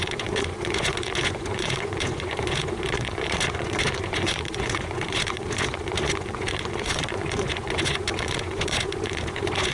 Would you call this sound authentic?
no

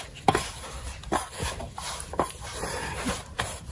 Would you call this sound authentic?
no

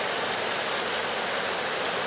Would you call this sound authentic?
yes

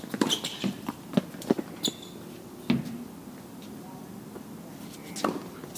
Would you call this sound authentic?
yes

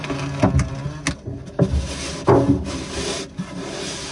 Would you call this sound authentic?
yes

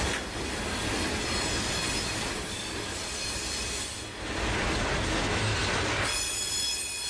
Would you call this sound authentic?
yes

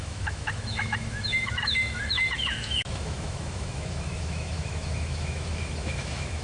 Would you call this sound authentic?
no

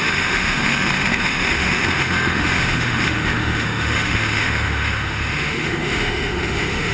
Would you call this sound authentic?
no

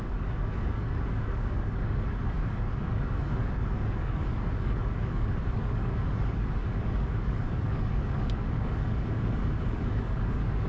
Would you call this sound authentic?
no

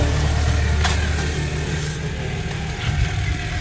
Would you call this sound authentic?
yes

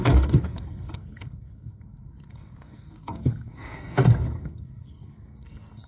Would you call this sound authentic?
no